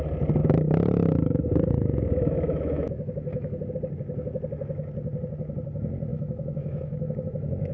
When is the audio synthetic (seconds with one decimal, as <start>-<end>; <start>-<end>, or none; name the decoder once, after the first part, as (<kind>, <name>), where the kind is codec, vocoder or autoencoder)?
0.4-3.7 (autoencoder, DAC-VAE); 6.1-7.7